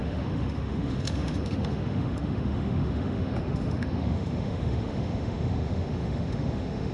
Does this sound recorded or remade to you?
remade